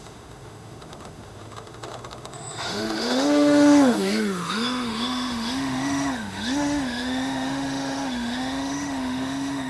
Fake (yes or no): yes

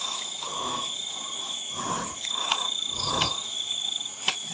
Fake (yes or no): yes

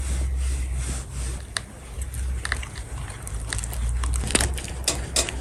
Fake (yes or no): no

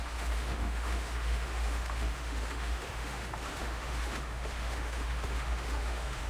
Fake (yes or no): yes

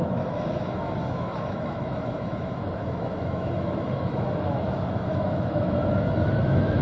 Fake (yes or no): yes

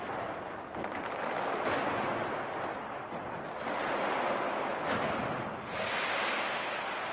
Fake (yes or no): no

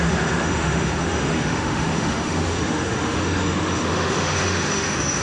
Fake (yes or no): yes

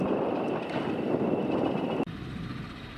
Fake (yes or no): no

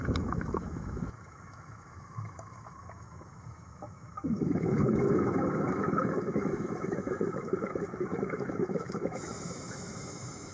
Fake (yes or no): yes